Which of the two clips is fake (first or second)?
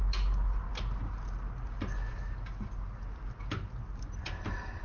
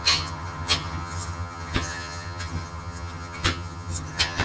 second